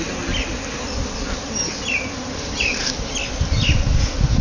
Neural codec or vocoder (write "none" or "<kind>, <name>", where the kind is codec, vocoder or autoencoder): none